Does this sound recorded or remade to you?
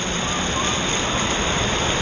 recorded